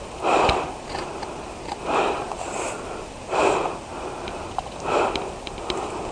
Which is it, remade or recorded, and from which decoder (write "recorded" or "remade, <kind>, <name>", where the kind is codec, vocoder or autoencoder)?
recorded